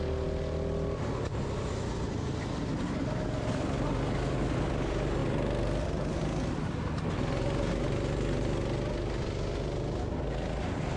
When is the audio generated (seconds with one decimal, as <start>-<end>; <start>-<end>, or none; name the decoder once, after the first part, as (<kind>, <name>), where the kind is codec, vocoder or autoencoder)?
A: none